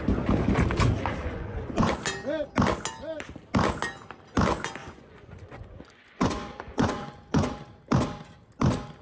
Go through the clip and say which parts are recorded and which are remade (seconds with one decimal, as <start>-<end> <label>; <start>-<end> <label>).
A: 0.0-1.2 recorded; 1.2-1.9 remade; 1.9-4.8 recorded; 4.8-7.5 remade; 7.5-9.0 recorded

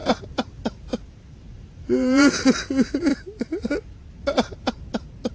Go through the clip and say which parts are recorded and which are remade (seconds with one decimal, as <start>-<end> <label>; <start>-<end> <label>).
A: 0.0-3.1 remade; 3.1-3.6 recorded; 3.6-5.3 remade

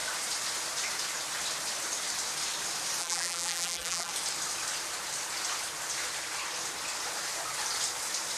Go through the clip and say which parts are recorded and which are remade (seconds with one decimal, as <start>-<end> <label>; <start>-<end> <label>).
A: 0.0-3.0 recorded; 3.0-4.1 remade; 4.1-8.4 recorded

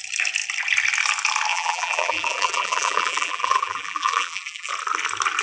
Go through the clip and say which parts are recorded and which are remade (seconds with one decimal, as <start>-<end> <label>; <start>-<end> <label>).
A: 0.0-1.5 recorded; 1.5-4.7 remade; 4.7-5.4 recorded

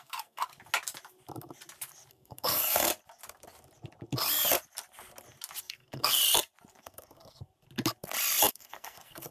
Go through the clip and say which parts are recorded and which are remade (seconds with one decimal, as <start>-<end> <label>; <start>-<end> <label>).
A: 0.0-0.5 remade; 0.5-2.1 recorded; 2.1-2.9 remade; 2.9-5.6 recorded; 5.6-6.2 remade; 6.2-6.8 recorded; 6.8-7.5 remade; 7.5-8.5 recorded; 8.5-9.3 remade

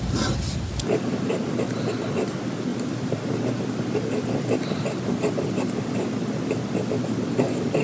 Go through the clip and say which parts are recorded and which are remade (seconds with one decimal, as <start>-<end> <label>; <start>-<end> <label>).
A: 0.0-2.7 recorded; 2.7-3.6 remade; 3.6-7.8 recorded